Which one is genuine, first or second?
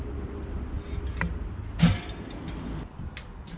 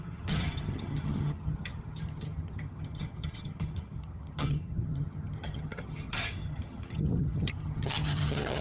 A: first